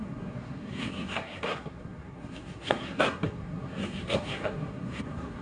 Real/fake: fake